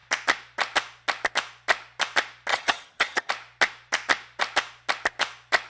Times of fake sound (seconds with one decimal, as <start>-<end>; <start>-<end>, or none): 2.5-3.3